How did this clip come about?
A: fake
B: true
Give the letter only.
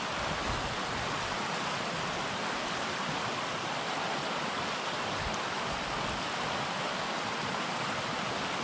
B